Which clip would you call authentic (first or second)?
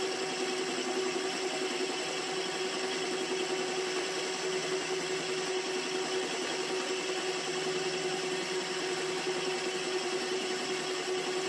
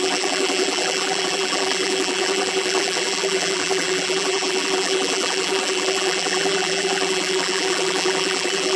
first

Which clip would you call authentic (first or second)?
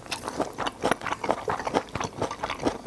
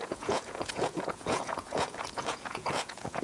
first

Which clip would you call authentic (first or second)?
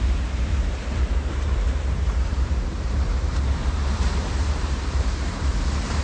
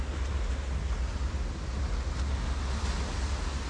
second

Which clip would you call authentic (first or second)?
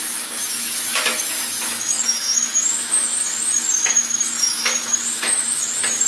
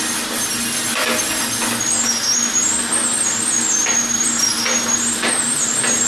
second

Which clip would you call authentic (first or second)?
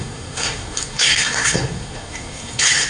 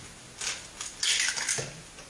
second